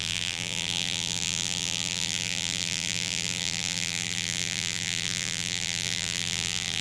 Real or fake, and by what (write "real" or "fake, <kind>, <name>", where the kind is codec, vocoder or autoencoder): fake, vocoder, BigVGAN v2